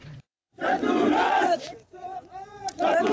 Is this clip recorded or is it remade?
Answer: remade